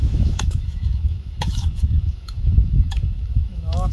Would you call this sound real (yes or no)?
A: no